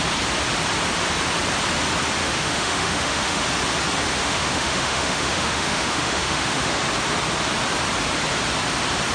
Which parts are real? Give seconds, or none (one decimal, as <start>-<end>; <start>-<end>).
0.0-2.2; 3.4-4.2; 6.8-9.1